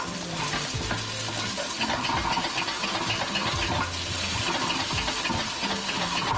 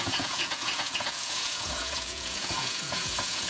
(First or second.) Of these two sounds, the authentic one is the first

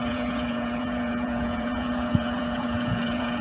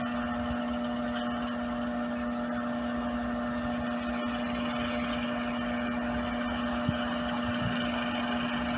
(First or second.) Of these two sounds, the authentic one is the second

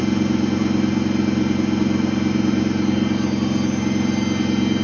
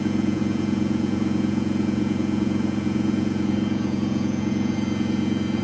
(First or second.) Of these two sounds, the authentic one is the first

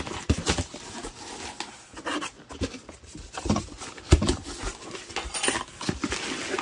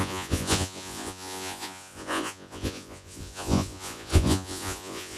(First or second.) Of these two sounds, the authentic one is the first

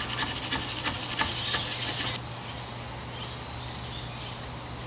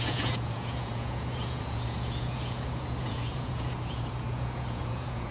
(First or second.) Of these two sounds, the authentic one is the first